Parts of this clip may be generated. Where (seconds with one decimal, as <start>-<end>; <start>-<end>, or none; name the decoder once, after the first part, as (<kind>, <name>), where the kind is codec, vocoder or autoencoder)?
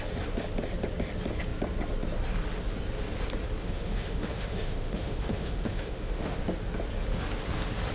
3.6-6.4 (autoencoder, DAC-VAE)